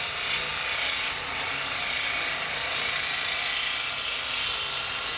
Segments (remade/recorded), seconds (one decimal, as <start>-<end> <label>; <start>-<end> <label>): 0.0-5.2 recorded